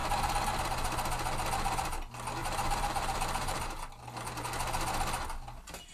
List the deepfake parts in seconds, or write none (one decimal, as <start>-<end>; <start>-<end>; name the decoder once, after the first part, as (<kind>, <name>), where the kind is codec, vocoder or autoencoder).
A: 2.4-3.9 (vocoder, BigVGAN v2)